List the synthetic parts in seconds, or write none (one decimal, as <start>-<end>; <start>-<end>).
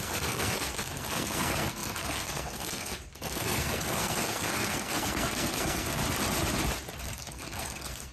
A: 0.0-6.0; 7.0-8.1